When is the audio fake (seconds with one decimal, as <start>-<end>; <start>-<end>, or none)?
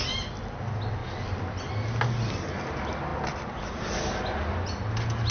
1.0-1.7